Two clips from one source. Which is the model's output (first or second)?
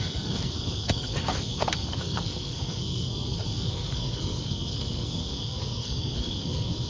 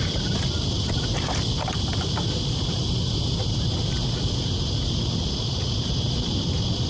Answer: first